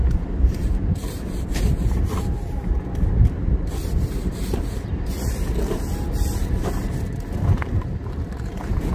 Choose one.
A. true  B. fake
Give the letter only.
B